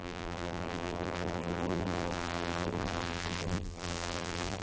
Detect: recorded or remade remade